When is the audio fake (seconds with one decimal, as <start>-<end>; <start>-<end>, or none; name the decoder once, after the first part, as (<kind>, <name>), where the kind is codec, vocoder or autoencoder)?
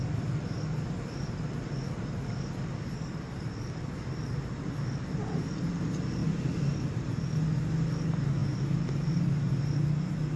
none